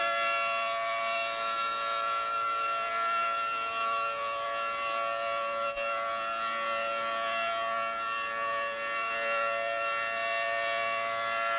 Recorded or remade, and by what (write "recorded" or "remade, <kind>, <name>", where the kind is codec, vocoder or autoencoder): recorded